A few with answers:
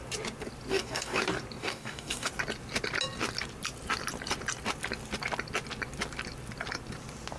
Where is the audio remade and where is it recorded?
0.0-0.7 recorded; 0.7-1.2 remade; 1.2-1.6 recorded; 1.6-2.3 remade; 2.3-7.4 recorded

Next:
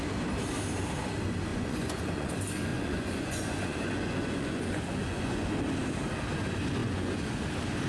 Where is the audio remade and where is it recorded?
0.0-1.5 recorded; 1.5-2.3 remade; 2.3-2.7 recorded; 2.7-5.5 remade; 5.5-6.8 recorded; 6.8-7.4 remade; 7.4-7.9 recorded

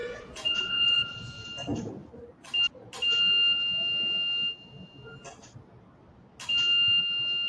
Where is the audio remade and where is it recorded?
0.0-1.2 remade; 1.2-7.5 recorded

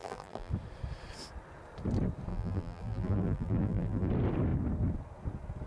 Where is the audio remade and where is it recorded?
0.0-0.5 remade; 0.5-2.3 recorded; 2.3-4.1 remade; 4.1-5.7 recorded

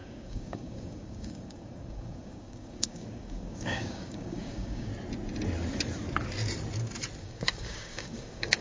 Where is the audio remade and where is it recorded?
0.0-4.9 remade; 4.9-7.2 recorded; 7.2-8.6 remade

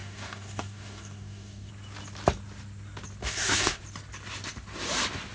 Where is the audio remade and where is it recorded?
0.0-1.7 remade; 1.7-3.2 recorded; 3.2-3.8 remade; 3.8-5.3 recorded

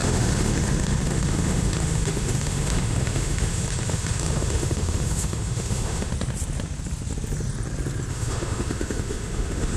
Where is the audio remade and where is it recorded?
0.0-6.1 remade; 6.1-8.1 recorded; 8.1-9.8 remade

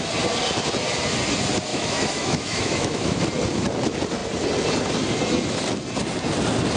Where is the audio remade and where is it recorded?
0.0-1.7 recorded; 1.7-3.2 remade; 3.2-6.8 recorded